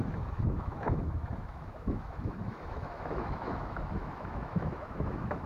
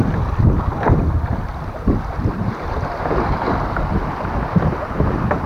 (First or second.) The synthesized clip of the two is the first